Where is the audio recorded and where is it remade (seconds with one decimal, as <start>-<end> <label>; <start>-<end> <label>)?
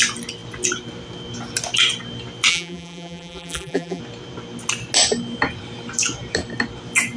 0.0-2.5 recorded; 2.5-4.0 remade; 4.0-7.2 recorded